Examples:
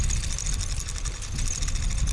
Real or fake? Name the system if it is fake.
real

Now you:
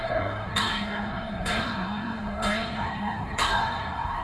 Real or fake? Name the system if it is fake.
fake, codec, SNAC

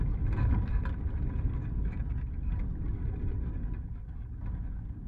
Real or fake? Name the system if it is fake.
real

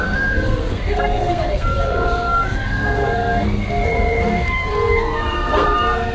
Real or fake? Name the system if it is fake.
fake, codec, SNAC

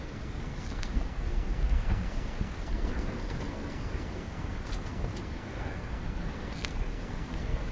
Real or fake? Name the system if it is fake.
fake, codec, SNAC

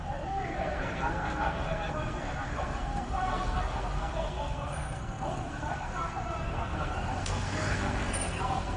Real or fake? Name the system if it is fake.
fake, codec, SNAC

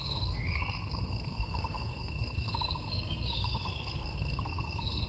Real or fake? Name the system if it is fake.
fake, codec, SNAC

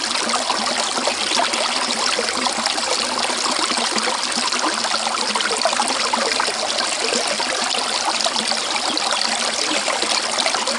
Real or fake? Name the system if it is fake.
real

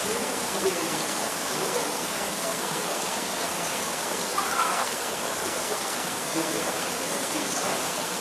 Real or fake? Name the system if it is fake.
fake, codec, SNAC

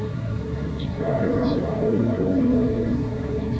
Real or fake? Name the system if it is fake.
fake, codec, SNAC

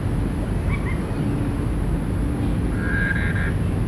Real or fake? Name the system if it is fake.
real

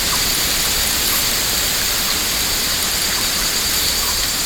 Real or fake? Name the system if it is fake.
real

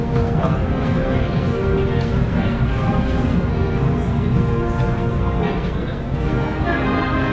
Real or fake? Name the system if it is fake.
fake, codec, SNAC